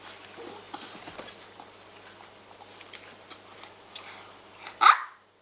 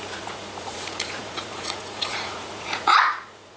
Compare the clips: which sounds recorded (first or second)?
first